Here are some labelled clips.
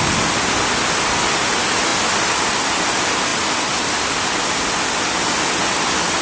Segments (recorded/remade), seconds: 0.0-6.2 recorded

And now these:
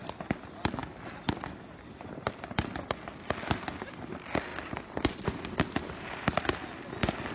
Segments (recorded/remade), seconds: 0.0-7.3 recorded

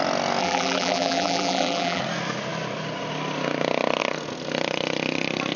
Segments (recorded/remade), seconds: 0.0-0.4 recorded; 0.4-2.0 remade; 2.0-5.6 recorded

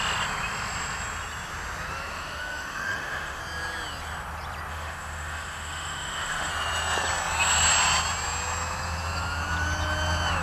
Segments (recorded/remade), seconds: 0.0-2.1 recorded; 2.1-3.4 remade; 3.4-4.7 recorded; 4.7-6.5 remade; 6.5-10.4 recorded

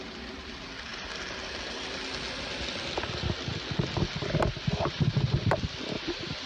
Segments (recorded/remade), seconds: 0.0-6.5 recorded

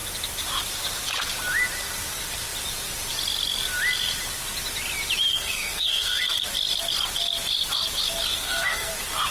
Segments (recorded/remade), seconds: 0.0-5.3 recorded; 5.3-6.2 remade; 6.2-8.3 recorded; 8.3-8.9 remade; 8.9-9.3 recorded